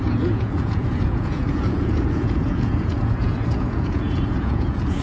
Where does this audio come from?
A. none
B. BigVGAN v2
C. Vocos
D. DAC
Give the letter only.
C